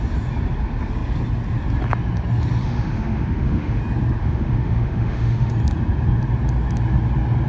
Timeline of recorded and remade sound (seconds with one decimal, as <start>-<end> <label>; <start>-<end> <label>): 0.0-2.6 recorded; 2.6-3.8 remade; 3.8-4.2 recorded; 4.2-5.5 remade; 5.5-7.5 recorded